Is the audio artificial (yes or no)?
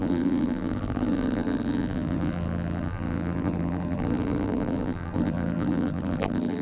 yes